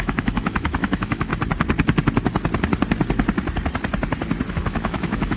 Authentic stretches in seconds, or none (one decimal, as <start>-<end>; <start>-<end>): 1.3-4.5